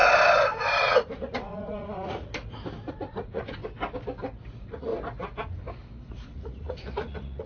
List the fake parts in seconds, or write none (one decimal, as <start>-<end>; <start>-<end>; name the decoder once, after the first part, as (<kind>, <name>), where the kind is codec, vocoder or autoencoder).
0.9-2.3 (vocoder, Vocos); 2.9-3.6; 4.5-4.9; 6.1-7.5